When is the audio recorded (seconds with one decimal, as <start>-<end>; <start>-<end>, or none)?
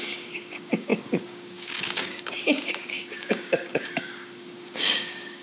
none